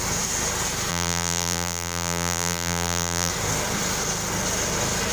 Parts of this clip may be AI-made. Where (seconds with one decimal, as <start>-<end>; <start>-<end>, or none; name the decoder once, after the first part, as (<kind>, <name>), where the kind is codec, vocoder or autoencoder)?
0.9-3.3 (vocoder, BigVGAN v2)